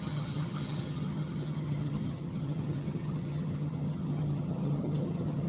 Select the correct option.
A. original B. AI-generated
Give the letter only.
B